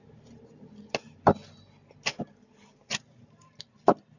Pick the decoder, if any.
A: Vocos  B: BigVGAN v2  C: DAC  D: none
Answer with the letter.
D